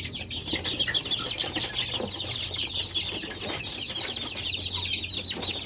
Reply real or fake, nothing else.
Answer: real